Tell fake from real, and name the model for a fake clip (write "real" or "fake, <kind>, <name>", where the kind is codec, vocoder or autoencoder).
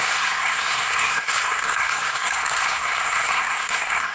fake, codec, SNAC